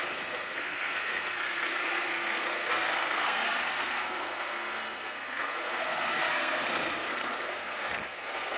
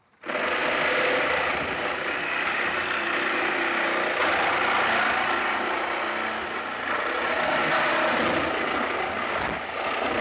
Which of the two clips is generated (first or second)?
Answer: first